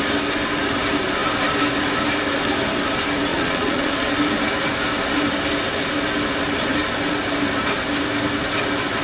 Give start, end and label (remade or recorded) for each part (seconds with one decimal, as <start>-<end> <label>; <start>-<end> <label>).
0.0-3.3 recorded; 3.3-4.1 remade; 4.1-9.0 recorded